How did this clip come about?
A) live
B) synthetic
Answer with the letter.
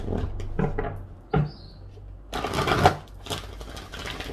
A